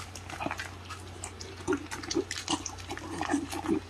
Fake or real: real